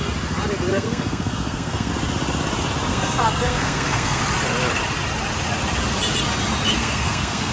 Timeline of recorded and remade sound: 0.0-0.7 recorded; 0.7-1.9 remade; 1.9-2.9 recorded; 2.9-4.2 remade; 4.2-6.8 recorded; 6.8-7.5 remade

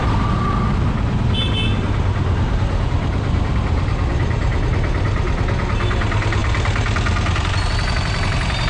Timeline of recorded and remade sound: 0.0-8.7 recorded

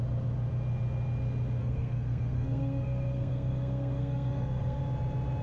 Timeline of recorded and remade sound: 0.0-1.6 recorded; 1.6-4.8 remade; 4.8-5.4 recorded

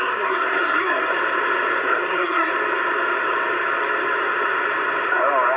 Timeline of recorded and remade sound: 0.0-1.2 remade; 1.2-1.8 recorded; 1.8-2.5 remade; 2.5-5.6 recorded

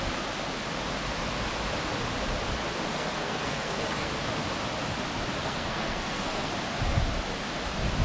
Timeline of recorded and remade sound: 0.0-2.9 recorded; 2.9-4.1 remade; 4.1-5.4 recorded; 5.4-6.5 remade; 6.5-8.0 recorded

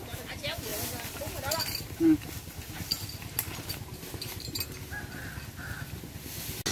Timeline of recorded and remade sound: 0.0-6.7 recorded

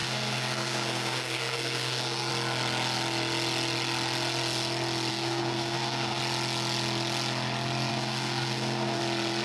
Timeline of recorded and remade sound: 0.0-2.3 remade; 2.3-5.1 recorded; 5.1-6.2 remade; 6.2-7.9 recorded; 7.9-9.0 remade; 9.0-9.4 recorded

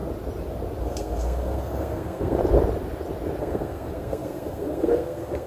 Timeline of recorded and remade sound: 0.0-0.8 recorded; 0.8-2.4 remade; 2.4-3.4 recorded; 3.4-5.5 remade